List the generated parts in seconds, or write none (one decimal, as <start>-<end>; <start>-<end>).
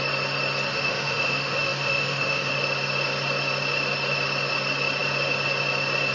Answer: 0.7-2.5